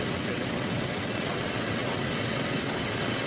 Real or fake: fake